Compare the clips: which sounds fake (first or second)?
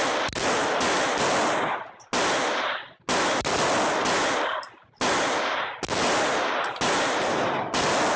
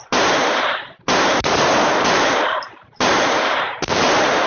second